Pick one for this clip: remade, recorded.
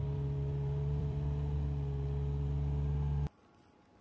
remade